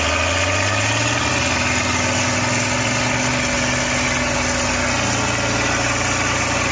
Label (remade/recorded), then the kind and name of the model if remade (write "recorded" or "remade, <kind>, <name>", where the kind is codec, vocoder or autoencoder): recorded